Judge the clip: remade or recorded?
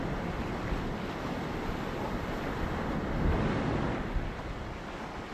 recorded